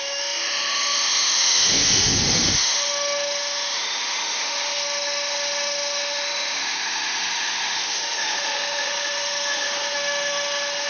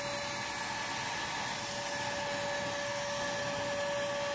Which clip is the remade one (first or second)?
first